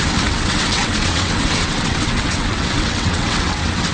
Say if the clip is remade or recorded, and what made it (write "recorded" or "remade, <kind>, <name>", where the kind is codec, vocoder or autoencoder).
remade, vocoder, WaveNeXt